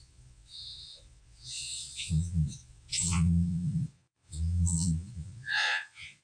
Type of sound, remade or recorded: remade